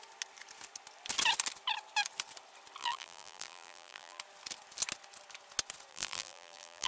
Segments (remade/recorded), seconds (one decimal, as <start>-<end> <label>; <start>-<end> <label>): 0.0-2.8 recorded; 2.8-4.2 remade; 4.2-5.9 recorded; 5.9-6.9 remade